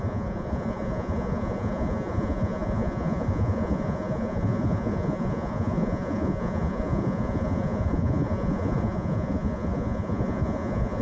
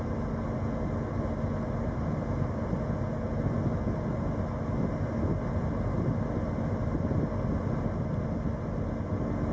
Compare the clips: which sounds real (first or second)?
second